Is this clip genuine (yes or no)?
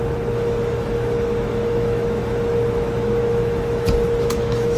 no